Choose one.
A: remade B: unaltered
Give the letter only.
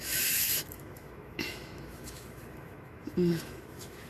A